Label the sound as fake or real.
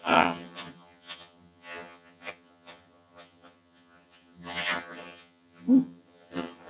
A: fake